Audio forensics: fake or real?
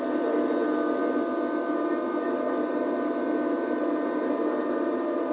real